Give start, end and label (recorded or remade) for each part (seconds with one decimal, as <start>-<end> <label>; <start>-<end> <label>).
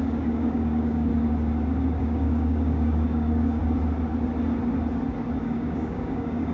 0.0-1.1 remade; 1.1-2.0 recorded; 2.0-3.6 remade; 3.6-5.4 recorded; 5.4-6.5 remade